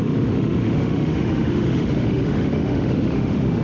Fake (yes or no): yes